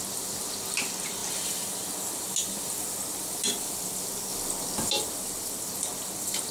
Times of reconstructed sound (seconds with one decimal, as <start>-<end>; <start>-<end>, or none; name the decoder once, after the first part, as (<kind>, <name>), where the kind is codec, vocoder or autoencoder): none